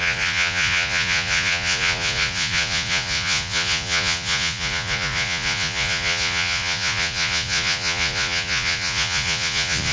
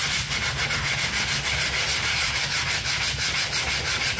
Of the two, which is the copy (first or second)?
first